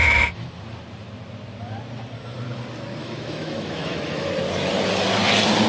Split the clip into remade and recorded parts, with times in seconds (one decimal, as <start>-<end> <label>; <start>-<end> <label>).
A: 0.0-0.6 remade; 0.6-3.0 recorded; 3.0-4.3 remade; 4.3-5.7 recorded